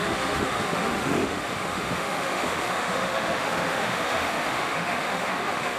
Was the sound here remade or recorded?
remade